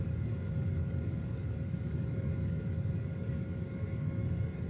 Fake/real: fake